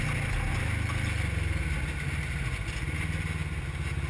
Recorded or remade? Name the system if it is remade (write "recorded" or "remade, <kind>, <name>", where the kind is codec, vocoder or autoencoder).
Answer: recorded